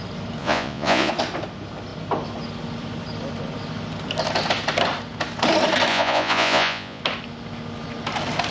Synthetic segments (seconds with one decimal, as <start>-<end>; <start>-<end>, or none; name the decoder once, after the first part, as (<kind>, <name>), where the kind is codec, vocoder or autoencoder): 0.4-1.1 (vocoder, Vocos); 5.9-7.0